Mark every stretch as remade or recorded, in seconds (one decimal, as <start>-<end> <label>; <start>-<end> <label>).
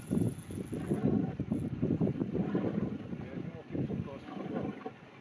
0.0-5.2 recorded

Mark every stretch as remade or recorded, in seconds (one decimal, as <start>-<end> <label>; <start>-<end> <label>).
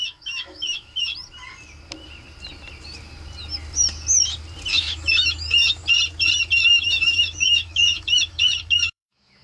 0.0-1.1 remade; 1.1-4.7 recorded; 4.7-5.8 remade; 5.8-6.6 recorded; 6.6-9.4 remade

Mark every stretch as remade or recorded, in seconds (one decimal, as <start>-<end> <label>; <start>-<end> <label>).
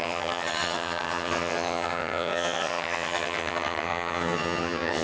0.0-5.0 remade